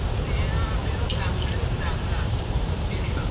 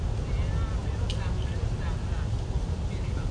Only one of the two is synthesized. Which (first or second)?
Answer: first